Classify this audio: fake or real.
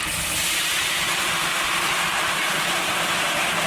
real